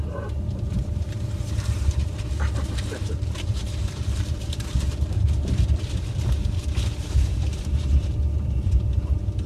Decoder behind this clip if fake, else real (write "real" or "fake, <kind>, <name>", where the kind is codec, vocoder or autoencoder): fake, vocoder, BigVGAN v2